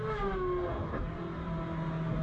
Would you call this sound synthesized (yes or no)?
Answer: no